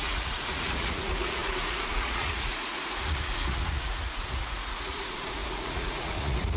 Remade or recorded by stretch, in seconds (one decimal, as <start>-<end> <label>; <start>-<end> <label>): 0.0-6.6 remade